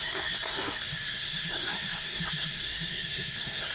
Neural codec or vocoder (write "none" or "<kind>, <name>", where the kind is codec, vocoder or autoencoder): codec, SNAC